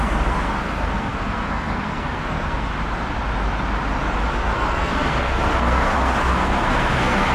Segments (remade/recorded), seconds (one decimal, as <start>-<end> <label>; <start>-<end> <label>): 0.0-2.7 remade; 2.7-4.3 recorded; 4.3-7.3 remade